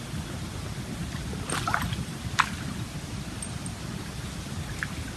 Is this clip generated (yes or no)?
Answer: no